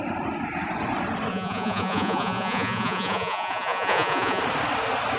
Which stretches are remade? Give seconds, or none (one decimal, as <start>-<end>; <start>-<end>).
1.3-4.4

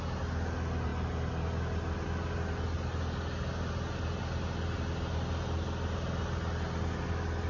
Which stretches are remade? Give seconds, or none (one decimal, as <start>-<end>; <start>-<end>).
none

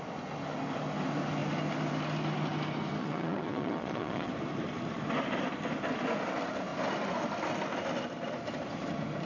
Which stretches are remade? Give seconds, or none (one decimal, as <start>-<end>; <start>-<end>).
3.0-4.3

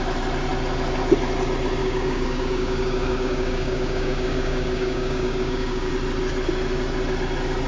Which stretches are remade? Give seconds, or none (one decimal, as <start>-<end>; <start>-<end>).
1.8-5.9

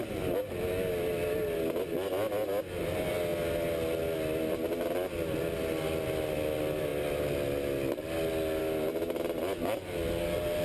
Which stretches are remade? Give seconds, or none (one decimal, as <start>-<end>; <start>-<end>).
none

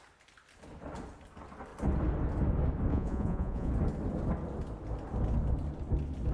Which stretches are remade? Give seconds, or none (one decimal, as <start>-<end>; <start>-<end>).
2.9-3.7

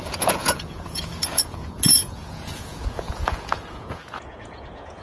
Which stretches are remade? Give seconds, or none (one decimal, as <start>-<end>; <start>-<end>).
0.0-5.0

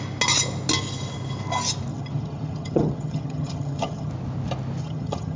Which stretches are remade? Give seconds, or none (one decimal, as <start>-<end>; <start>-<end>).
1.9-4.1; 4.8-5.4